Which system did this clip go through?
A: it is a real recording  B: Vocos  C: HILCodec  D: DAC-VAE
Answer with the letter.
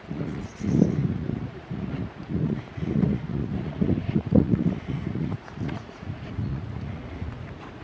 B